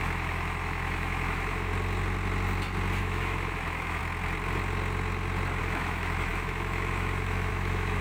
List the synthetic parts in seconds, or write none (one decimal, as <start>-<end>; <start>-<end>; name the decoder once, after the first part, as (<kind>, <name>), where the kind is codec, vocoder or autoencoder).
0.0-1.7 (autoencoder, DAC-VAE); 3.0-4.0; 5.6-8.0